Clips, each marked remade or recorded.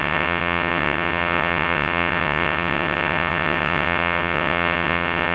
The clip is remade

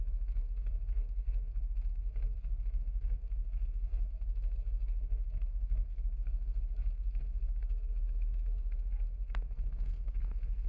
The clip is remade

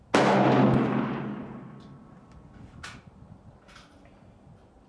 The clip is recorded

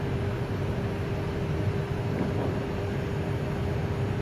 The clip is recorded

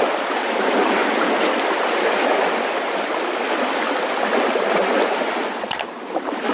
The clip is recorded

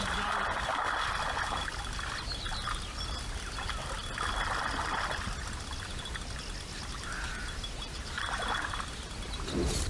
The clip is recorded